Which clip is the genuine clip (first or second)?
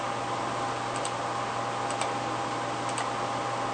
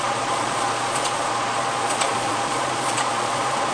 first